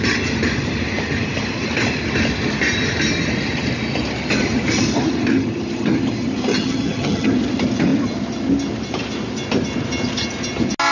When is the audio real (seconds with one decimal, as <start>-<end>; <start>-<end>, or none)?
0.0-6.5; 7.3-10.9